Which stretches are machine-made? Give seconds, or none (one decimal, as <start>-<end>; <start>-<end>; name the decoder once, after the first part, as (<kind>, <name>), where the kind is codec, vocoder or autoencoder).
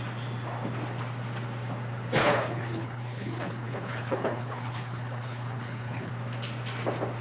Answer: 2.2-6.1 (codec, HILCodec)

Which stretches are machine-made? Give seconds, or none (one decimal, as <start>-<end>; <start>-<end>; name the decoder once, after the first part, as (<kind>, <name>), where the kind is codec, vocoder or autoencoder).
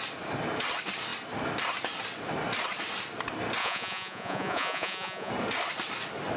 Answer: 3.6-5.3 (vocoder, Vocos)